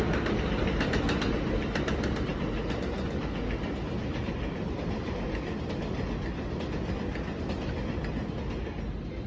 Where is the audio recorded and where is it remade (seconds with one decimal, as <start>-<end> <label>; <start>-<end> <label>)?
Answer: 0.0-9.3 recorded